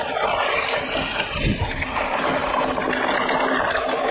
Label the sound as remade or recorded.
recorded